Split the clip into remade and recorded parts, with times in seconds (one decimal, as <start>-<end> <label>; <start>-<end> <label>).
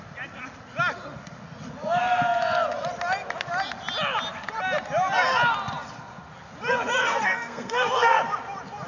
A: 0.0-7.0 recorded; 7.0-8.2 remade; 8.2-8.9 recorded